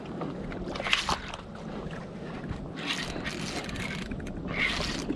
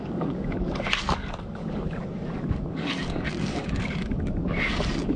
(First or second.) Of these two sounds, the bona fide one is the first